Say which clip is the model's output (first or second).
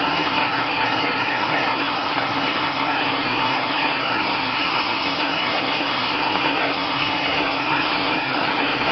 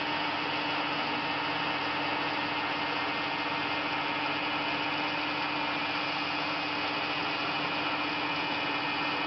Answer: first